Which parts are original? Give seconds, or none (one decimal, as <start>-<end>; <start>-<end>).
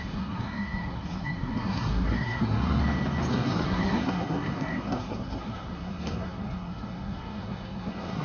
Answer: 2.8-3.3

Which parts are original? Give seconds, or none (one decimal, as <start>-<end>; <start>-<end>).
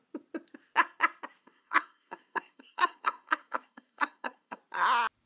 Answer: 0.0-1.4; 4.6-5.3